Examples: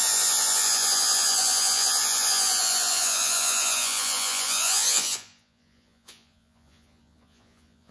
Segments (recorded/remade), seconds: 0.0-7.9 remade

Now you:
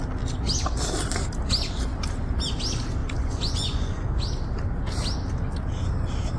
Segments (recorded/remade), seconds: 0.0-3.0 recorded; 3.0-4.0 remade; 4.0-6.4 recorded

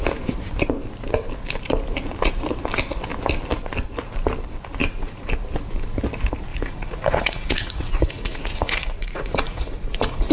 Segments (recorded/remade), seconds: 0.0-4.8 recorded; 4.8-5.3 remade; 5.3-6.5 recorded; 6.5-10.3 remade

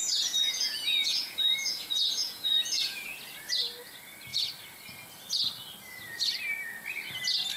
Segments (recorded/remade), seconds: 0.0-3.2 remade; 3.2-7.6 recorded

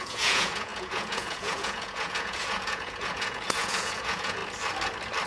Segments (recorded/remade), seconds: 0.0-4.4 remade; 4.4-5.3 recorded